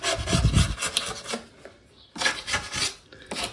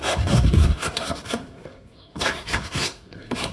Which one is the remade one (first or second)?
second